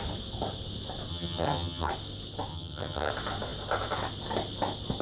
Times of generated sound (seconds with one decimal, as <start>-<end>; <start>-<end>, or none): 1.1-1.9; 2.5-3.1